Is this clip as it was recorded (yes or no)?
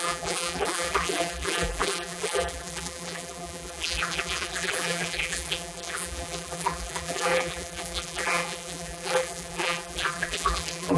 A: no